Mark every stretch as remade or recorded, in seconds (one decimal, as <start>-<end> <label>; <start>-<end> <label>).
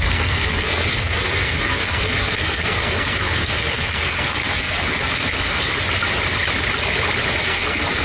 0.0-5.7 remade; 5.7-7.4 recorded; 7.4-8.0 remade